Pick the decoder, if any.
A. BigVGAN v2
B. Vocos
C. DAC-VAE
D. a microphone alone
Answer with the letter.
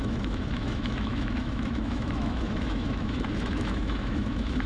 C